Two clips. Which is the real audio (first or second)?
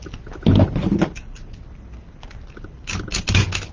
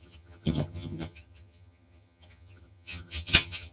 first